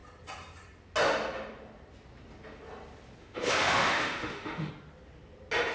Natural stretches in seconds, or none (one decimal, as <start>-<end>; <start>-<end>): 0.0-3.2; 4.7-5.7